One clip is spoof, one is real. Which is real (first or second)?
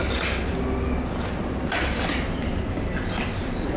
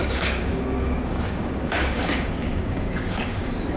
first